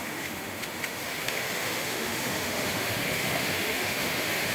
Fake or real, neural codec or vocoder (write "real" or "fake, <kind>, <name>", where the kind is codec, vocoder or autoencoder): fake, autoencoder, DAC-VAE